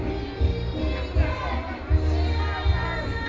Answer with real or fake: real